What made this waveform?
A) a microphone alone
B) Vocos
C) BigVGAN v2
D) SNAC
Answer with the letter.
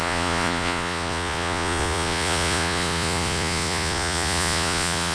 B